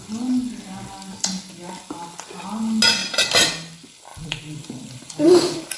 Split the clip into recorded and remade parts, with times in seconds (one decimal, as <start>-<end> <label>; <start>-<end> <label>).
0.0-3.0 recorded; 3.0-3.5 remade; 3.5-4.1 recorded; 4.1-5.8 remade